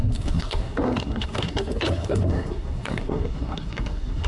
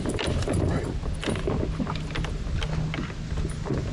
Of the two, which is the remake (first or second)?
first